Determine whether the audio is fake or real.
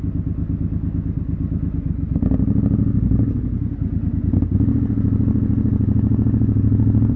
real